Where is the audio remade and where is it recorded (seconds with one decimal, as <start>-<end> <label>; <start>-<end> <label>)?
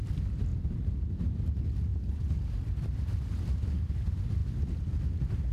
0.0-0.5 recorded; 0.5-1.1 remade; 1.1-1.9 recorded; 1.9-3.0 remade; 3.0-4.4 recorded; 4.4-5.0 remade; 5.0-5.5 recorded